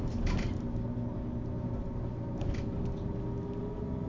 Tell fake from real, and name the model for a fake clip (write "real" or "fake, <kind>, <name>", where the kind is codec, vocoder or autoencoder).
real